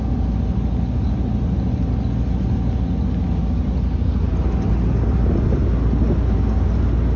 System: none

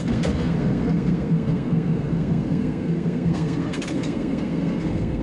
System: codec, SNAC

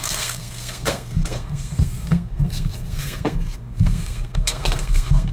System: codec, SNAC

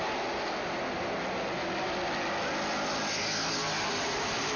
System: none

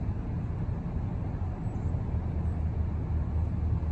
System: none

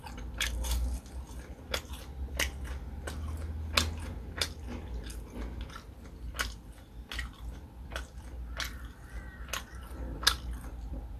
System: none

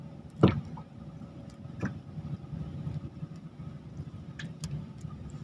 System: none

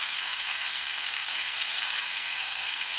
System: codec, SNAC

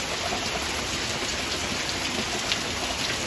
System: none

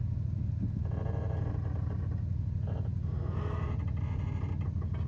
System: none